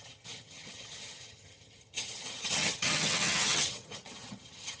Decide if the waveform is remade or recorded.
remade